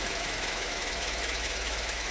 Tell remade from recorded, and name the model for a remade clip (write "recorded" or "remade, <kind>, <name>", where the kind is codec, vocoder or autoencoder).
remade, autoencoder, DAC-VAE